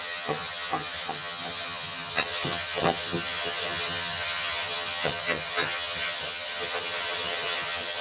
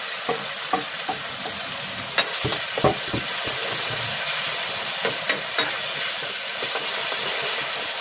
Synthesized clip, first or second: first